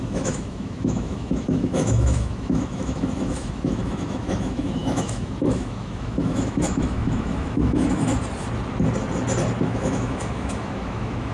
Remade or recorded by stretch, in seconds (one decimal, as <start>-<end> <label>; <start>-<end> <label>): 0.0-8.1 remade; 8.1-9.6 recorded; 9.6-11.3 remade